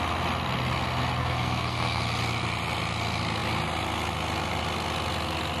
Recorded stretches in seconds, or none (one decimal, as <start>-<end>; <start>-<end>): 0.0-1.2; 2.0-5.6